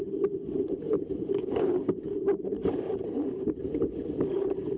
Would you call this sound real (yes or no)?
no